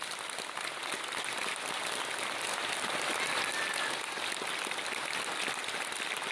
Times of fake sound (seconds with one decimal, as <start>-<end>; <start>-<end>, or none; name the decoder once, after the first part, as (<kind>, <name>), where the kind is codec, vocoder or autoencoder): none